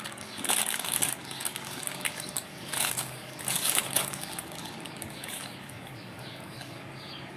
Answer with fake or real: fake